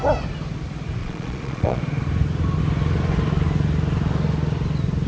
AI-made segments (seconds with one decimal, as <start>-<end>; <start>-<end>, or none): 1.0-1.8